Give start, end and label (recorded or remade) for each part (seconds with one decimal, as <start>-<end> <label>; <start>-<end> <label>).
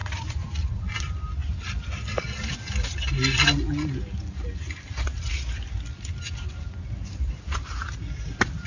0.0-0.9 remade; 0.9-8.7 recorded